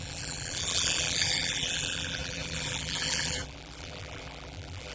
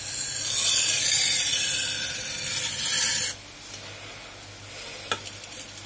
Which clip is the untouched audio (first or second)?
second